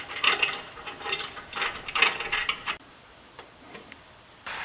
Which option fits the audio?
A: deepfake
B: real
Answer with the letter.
A